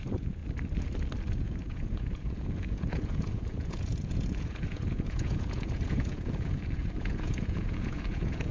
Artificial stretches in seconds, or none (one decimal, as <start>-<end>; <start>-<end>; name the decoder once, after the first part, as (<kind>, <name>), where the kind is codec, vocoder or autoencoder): 0.0-0.4 (vocoder, Vocos); 1.3-8.5